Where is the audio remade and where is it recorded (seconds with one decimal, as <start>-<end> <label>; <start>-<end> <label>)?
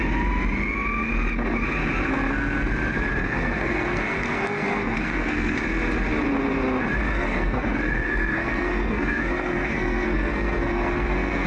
0.0-3.1 recorded; 3.1-5.6 remade; 5.6-7.1 recorded; 7.1-11.5 remade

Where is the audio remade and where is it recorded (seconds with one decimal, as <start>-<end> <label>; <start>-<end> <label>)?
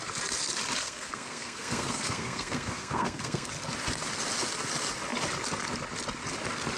0.0-0.8 recorded; 0.8-3.5 remade; 3.5-6.8 recorded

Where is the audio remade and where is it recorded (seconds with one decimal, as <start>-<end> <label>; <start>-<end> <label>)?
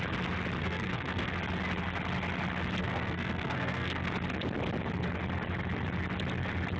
0.0-0.6 recorded; 0.6-1.3 remade; 1.3-2.8 recorded; 2.8-4.1 remade; 4.1-6.8 recorded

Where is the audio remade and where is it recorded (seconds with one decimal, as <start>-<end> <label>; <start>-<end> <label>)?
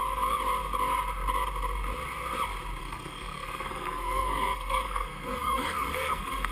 0.0-2.8 recorded; 2.8-6.5 remade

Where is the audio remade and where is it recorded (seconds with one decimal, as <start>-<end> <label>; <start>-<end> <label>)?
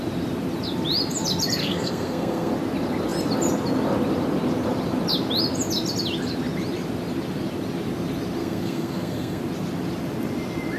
0.0-1.6 recorded; 1.6-2.5 remade; 2.5-8.4 recorded; 8.4-9.4 remade; 9.4-10.8 recorded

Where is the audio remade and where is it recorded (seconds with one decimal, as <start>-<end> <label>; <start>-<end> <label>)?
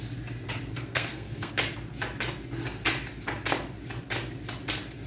0.0-0.7 recorded; 0.7-1.5 remade; 1.5-5.1 recorded